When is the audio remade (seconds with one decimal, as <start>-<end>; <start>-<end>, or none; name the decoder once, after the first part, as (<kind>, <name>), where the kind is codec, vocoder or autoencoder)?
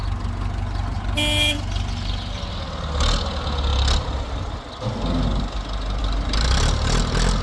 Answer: none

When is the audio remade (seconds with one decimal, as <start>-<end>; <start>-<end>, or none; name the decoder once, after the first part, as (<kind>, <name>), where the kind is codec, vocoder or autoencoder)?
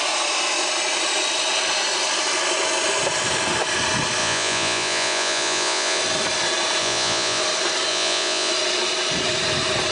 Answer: 4.2-6.0 (vocoder, Vocos); 6.8-7.4; 7.9-8.5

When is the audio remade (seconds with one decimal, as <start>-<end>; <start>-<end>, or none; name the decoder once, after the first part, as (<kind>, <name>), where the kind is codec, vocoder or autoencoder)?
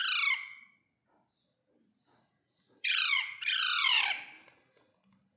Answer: 1.8-4.0 (vocoder, Vocos)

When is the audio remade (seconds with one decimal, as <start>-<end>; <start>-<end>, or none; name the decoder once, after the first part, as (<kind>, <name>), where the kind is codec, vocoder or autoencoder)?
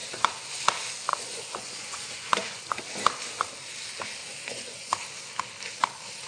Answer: 0.0-0.6 (vocoder, Vocos); 1.1-2.8; 4.2-4.9